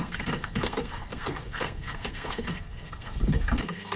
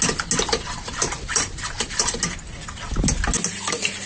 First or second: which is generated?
first